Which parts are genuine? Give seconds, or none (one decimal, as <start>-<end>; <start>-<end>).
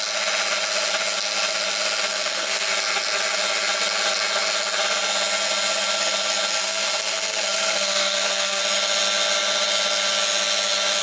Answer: 0.0-2.1; 2.7-6.6; 8.6-11.0